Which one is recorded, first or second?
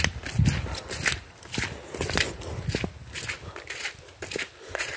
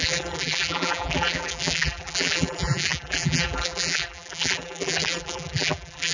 first